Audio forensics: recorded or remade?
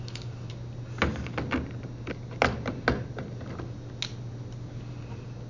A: recorded